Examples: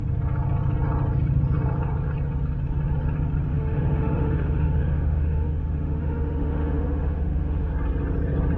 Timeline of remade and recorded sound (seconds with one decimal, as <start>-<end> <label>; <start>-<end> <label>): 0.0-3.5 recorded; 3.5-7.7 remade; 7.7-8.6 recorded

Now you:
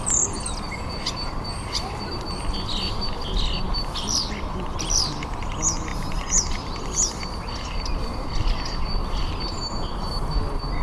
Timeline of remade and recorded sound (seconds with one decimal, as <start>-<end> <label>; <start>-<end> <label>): 0.0-10.8 recorded

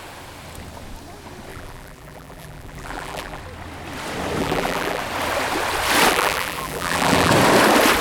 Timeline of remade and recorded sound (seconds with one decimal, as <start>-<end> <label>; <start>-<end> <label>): 0.0-1.5 recorded; 1.5-3.4 remade; 3.4-4.4 recorded; 4.4-5.0 remade; 5.0-6.1 recorded; 6.1-7.3 remade; 7.3-8.0 recorded

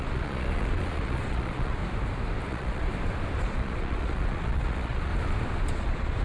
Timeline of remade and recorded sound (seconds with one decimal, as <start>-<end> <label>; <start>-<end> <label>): 0.0-1.8 remade; 1.8-2.5 recorded; 2.5-2.9 remade; 2.9-3.4 recorded; 3.4-5.1 remade; 5.1-5.7 recorded; 5.7-6.2 remade

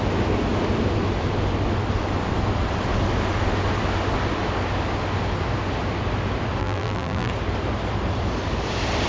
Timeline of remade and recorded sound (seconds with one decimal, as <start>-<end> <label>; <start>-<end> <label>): 0.0-6.6 recorded; 6.6-7.3 remade; 7.3-9.1 recorded